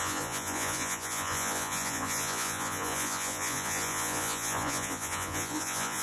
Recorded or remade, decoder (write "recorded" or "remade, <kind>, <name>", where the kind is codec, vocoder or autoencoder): remade, vocoder, Vocos